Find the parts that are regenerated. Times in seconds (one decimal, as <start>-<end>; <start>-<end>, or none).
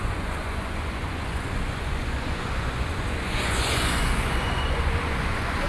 0.0-5.7